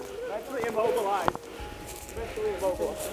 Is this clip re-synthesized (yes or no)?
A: no